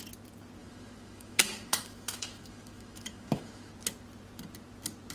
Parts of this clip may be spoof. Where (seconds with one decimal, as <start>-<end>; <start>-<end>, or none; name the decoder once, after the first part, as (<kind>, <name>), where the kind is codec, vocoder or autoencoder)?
0.6-3.7 (autoencoder, DAC-VAE)